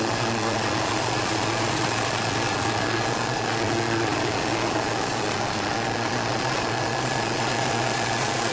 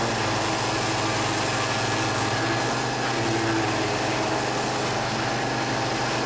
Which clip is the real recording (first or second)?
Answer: second